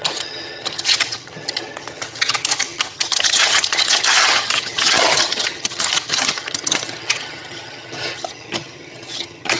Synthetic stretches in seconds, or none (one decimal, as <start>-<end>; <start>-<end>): 0.0-9.6

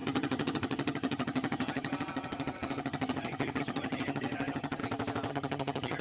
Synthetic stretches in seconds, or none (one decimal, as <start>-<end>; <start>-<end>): 0.0-4.8; 5.3-6.0

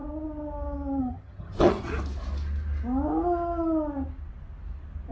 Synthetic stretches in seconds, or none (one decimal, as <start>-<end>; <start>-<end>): 1.0-1.9